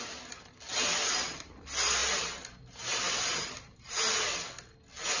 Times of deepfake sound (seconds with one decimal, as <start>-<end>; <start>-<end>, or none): 2.0-4.1